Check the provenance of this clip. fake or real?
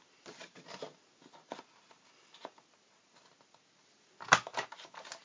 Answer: real